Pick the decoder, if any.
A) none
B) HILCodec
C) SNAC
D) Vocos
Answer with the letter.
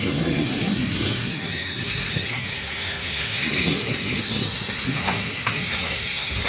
C